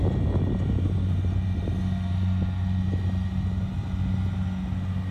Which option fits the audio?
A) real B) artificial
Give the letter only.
A